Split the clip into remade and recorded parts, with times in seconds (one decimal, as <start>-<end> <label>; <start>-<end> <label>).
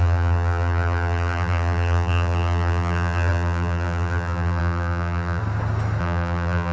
0.0-5.4 remade; 5.4-6.0 recorded; 6.0-6.7 remade